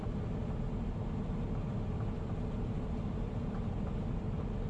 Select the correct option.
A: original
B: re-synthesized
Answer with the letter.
A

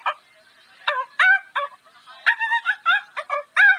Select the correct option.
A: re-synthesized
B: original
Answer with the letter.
B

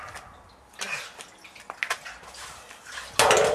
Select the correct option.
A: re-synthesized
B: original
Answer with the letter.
B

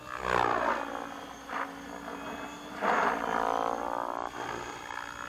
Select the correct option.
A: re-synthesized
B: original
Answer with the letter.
B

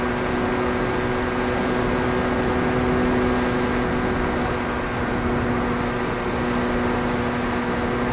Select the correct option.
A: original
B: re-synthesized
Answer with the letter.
A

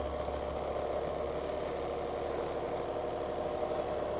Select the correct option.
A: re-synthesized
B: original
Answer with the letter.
B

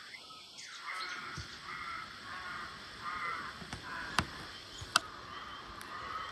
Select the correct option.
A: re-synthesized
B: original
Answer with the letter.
B